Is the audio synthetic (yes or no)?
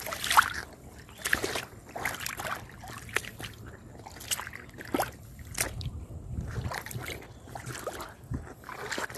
no